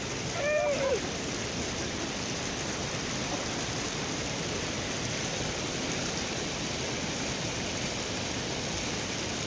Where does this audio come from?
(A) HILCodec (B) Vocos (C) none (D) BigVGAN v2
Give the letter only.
C